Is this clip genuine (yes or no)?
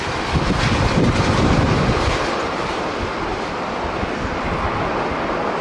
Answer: yes